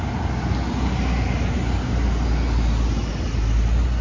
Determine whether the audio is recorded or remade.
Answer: recorded